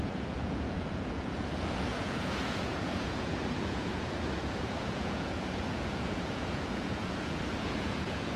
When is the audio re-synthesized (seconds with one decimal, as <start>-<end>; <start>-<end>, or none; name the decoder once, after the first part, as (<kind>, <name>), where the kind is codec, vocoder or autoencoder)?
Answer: 0.0-8.4 (vocoder, Vocos)